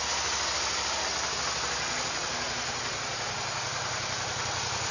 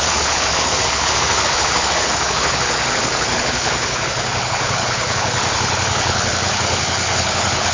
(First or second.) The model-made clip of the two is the second